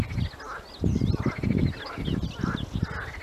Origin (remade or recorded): recorded